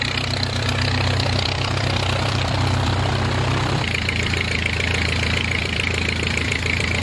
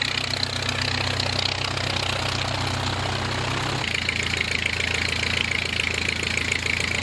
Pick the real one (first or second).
second